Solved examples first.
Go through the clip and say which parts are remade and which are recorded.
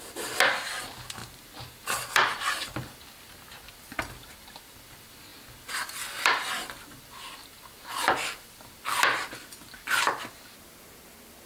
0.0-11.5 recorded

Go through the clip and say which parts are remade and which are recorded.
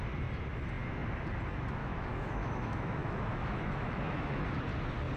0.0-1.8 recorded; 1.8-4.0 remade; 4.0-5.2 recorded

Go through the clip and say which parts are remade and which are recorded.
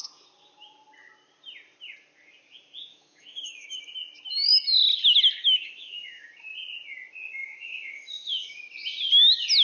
0.0-2.9 recorded; 2.9-3.8 remade; 3.8-5.4 recorded; 5.4-6.3 remade; 6.3-7.3 recorded; 7.3-8.6 remade; 8.6-9.6 recorded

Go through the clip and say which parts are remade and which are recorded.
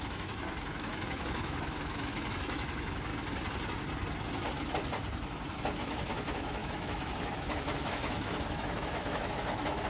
0.0-3.1 remade; 3.1-5.8 recorded; 5.8-9.9 remade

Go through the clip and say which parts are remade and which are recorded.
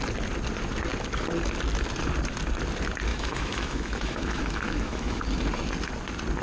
0.0-3.1 recorded; 3.1-5.2 remade; 5.2-6.4 recorded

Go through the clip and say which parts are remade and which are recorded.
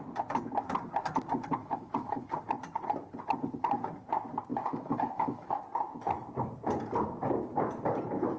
0.0-1.6 recorded; 1.6-2.3 remade; 2.3-4.5 recorded; 4.5-5.6 remade; 5.6-8.4 recorded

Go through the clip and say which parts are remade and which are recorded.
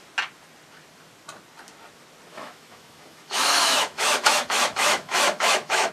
0.0-2.3 recorded; 2.3-5.9 remade